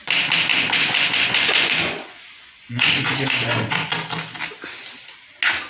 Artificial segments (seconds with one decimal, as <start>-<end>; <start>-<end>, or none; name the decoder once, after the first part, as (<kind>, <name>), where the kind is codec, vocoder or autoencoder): 0.5-3.9 (vocoder, Vocos)